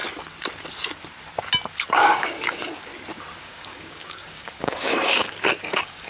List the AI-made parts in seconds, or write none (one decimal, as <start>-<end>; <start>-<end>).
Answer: 1.9-2.9; 3.4-6.1